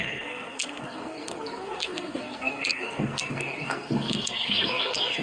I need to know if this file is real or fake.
fake